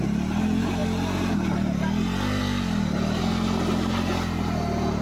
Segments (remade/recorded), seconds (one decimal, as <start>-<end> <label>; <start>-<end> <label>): 0.0-5.0 recorded